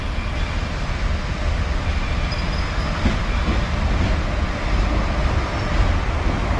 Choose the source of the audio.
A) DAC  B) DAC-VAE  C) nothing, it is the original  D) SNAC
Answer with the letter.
C